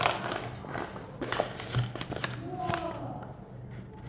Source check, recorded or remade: recorded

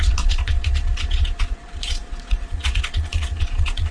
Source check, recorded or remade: remade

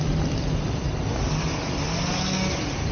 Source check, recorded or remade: recorded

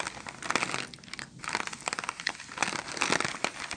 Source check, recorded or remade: recorded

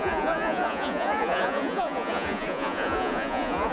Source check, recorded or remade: remade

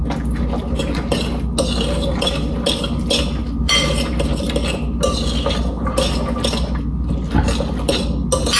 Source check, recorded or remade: recorded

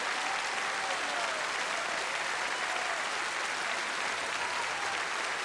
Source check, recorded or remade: recorded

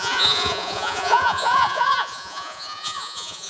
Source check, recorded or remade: remade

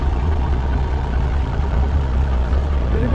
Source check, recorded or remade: remade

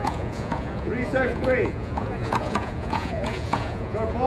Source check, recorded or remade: remade